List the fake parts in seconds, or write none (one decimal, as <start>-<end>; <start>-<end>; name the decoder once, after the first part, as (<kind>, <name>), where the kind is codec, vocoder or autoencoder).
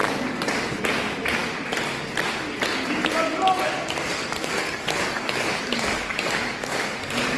0.0-0.8 (codec, DAC); 4.2-7.4